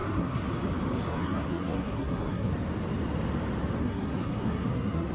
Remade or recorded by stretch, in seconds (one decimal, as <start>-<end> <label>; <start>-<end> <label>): 0.0-0.5 remade; 0.5-1.0 recorded; 1.0-2.5 remade; 2.5-3.8 recorded; 3.8-5.1 remade